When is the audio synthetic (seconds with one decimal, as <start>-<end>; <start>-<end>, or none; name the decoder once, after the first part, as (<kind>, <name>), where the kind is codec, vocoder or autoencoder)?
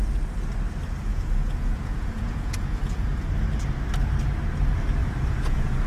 1.1-3.2 (vocoder, Vocos); 5.0-5.9